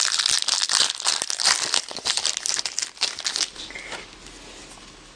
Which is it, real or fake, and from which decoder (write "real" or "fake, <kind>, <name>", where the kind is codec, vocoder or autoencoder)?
real